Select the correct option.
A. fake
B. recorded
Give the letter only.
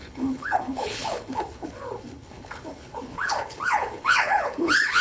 A